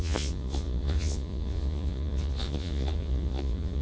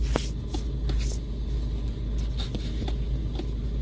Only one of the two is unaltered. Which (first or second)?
second